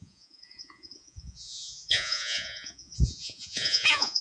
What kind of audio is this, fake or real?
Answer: fake